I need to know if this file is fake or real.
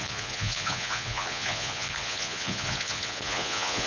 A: fake